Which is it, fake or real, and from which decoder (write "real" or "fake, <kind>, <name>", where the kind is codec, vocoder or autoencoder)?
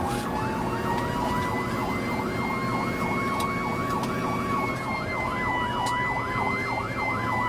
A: real